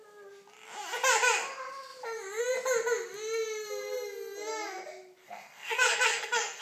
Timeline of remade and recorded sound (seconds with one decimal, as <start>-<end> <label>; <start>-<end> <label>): 0.0-5.2 recorded; 5.2-6.6 remade